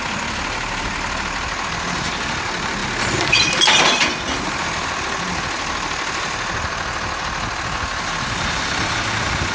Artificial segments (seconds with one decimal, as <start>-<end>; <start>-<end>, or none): none